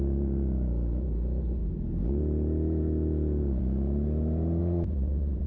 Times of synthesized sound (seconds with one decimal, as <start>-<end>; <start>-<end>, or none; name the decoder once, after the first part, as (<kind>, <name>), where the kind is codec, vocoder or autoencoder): 4.6-5.5 (vocoder, Vocos)